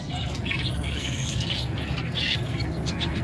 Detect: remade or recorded remade